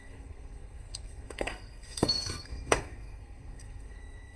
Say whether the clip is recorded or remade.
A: remade